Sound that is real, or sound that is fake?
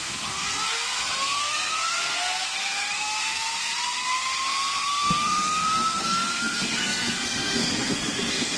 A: fake